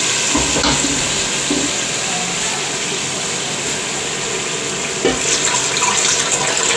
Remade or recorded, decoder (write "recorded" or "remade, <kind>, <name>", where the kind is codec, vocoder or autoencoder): recorded